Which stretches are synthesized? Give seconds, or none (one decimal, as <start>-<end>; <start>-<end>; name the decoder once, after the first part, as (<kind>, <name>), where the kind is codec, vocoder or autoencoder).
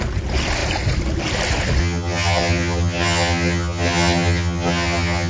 1.8-5.3 (vocoder, HiFi-GAN)